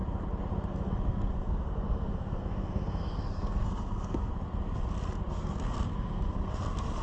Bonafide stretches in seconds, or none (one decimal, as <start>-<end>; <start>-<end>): 0.0-0.7; 4.3-5.3